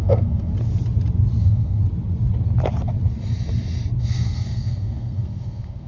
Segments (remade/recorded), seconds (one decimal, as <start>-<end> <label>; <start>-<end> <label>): 0.0-0.5 remade; 0.5-1.4 recorded; 1.4-1.8 remade; 1.8-4.0 recorded; 4.0-5.9 remade